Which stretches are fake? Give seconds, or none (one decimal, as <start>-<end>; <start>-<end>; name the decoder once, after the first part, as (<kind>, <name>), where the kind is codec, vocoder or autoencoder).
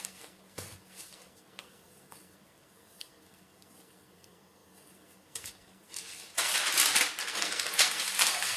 0.0-6.5 (codec, SNAC); 7.2-8.6